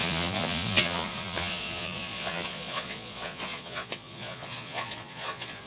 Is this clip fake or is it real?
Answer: fake